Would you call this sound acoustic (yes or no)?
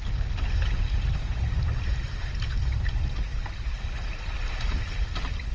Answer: yes